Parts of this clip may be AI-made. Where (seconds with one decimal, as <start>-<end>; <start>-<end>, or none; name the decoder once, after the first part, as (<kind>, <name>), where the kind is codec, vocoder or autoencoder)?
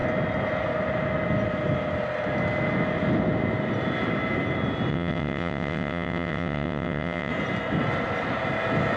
4.9-7.3 (vocoder, WaveNeXt)